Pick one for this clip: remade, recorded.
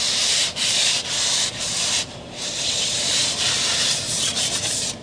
remade